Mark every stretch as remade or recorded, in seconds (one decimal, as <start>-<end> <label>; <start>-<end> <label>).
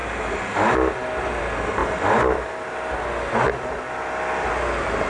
0.0-5.1 recorded